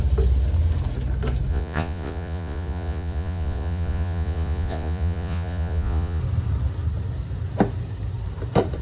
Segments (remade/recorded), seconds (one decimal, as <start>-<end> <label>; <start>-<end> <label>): 0.0-1.5 recorded; 1.5-6.2 remade; 6.2-8.8 recorded